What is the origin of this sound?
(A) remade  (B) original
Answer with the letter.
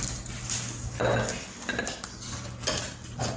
B